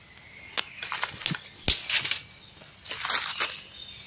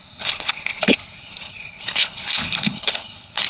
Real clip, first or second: first